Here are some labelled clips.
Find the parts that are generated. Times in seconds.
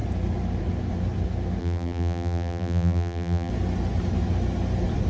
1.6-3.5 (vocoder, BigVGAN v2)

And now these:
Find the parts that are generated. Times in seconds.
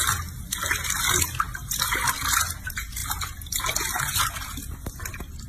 none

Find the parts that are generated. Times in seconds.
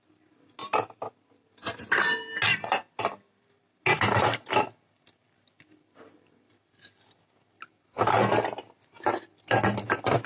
none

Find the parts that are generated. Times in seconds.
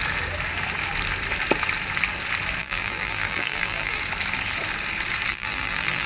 2.6-4.0 (vocoder, BigVGAN v2); 5.3-6.1